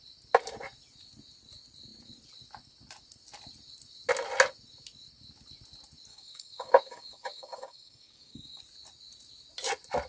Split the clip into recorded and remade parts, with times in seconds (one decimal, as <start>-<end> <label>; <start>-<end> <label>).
0.0-6.1 recorded; 6.1-8.6 remade; 8.6-10.1 recorded